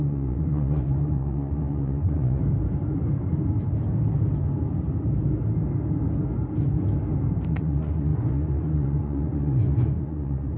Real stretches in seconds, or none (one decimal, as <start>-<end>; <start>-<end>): 2.4-7.5